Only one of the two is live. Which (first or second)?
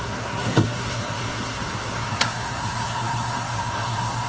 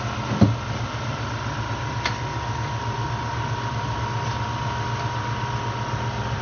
second